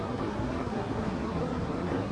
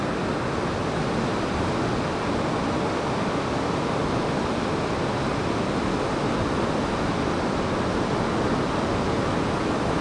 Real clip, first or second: second